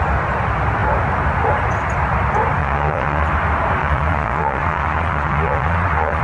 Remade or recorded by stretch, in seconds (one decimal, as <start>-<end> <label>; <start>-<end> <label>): 0.0-2.6 recorded; 2.6-3.3 remade; 3.3-3.8 recorded; 3.8-6.2 remade

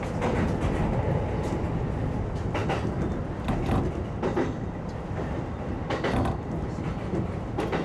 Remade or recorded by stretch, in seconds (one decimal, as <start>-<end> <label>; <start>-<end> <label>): 0.0-7.8 recorded

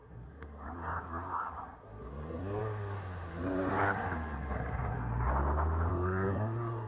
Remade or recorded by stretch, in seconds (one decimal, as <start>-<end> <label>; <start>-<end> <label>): 0.0-5.3 remade; 5.3-5.9 recorded; 5.9-6.9 remade

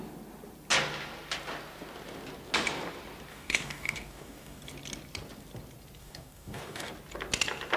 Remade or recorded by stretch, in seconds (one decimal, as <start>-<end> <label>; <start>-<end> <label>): 0.0-3.3 recorded; 3.3-4.6 remade; 4.6-6.0 recorded; 6.0-6.9 remade; 6.9-7.8 recorded

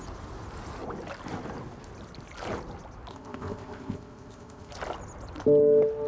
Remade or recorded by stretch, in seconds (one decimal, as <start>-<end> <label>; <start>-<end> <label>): 0.0-3.1 recorded; 3.1-4.7 remade; 4.7-6.1 recorded

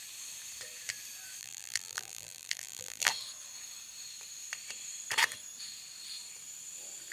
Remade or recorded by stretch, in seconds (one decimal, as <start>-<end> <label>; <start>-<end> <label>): 0.0-1.4 recorded; 1.4-3.1 remade; 3.1-7.1 recorded

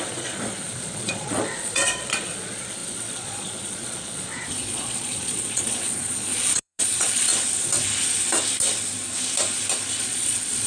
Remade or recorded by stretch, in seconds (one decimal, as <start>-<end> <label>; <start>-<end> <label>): 0.0-7.3 remade; 7.3-10.0 recorded; 10.0-10.7 remade